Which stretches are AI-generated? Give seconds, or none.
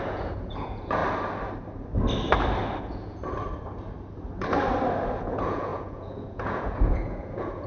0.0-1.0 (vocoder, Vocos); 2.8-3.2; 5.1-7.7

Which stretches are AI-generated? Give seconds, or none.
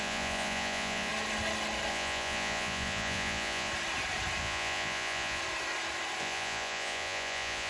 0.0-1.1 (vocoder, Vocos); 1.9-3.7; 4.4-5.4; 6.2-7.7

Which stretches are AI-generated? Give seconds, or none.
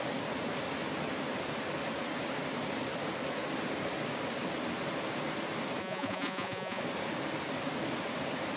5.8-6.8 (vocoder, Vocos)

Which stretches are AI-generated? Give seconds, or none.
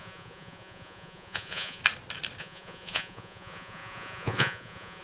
0.0-1.8 (vocoder, Vocos); 2.4-5.0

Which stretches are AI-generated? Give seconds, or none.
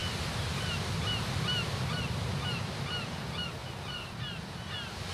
none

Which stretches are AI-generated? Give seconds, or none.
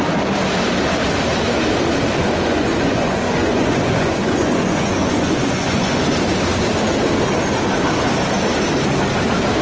2.2-6.0 (vocoder, Vocos)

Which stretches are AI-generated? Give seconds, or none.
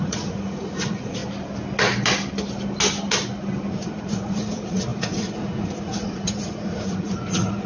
0.0-1.2 (vocoder, Vocos); 3.7-7.7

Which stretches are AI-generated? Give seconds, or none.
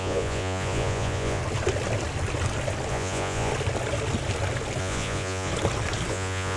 0.0-1.4 (vocoder, Vocos); 2.9-3.5; 4.8-5.5; 6.1-6.6